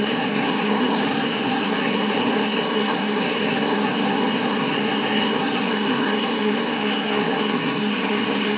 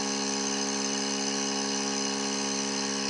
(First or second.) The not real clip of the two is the first